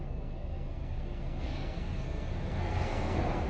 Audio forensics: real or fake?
fake